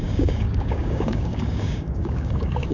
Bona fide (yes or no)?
no